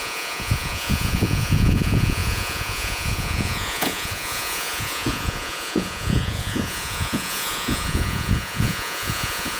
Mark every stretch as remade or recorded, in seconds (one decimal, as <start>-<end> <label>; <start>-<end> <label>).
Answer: 0.0-9.6 remade